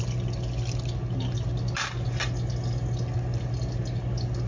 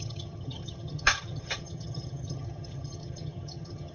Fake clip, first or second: second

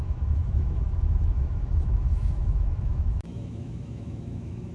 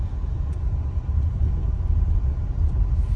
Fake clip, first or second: first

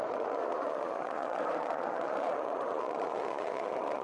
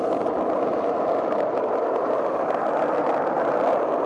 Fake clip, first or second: first